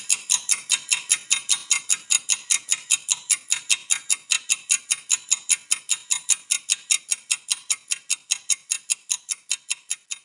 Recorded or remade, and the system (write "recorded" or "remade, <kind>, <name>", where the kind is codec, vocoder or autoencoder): recorded